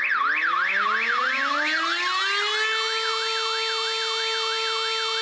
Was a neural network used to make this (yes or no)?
no